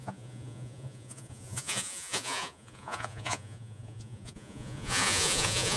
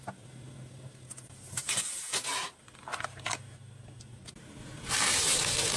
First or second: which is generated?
first